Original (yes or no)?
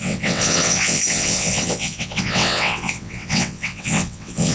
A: no